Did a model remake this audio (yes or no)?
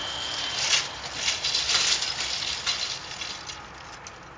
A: no